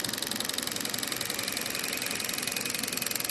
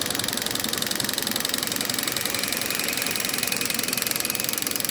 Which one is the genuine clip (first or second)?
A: first